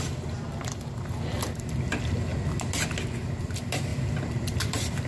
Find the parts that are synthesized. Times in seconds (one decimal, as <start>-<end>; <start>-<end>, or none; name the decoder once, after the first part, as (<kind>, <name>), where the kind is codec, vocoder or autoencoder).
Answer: 0.0-2.3 (vocoder, BigVGAN v2); 3.4-5.1